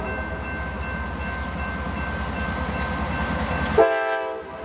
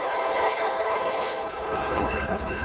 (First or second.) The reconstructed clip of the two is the second